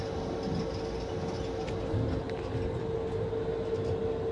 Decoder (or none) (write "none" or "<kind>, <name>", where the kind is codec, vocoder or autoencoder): none